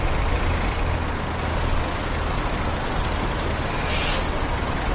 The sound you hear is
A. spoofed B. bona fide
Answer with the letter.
B